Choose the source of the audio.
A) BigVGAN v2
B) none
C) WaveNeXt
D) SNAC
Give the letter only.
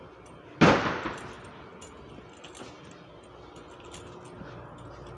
B